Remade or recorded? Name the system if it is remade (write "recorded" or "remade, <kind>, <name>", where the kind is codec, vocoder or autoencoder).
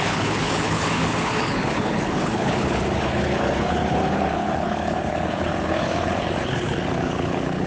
remade, codec, HILCodec